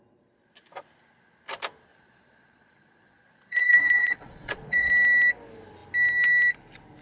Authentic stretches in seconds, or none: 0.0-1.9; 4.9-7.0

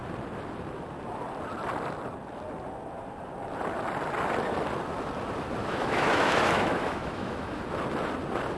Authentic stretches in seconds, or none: 0.0-5.6; 7.6-8.6